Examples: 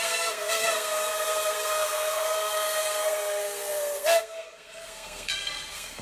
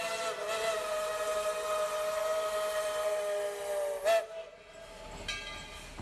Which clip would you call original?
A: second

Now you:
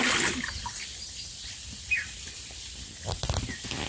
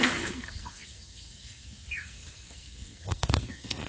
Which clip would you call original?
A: first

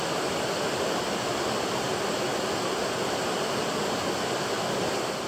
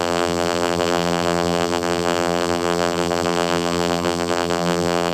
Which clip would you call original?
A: first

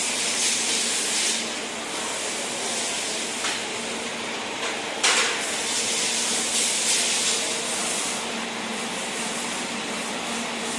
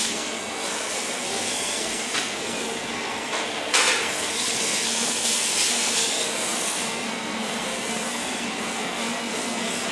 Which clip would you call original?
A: first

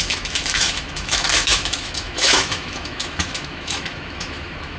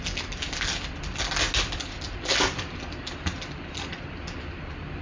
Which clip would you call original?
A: second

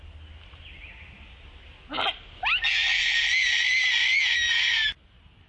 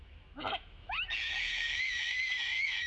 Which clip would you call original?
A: first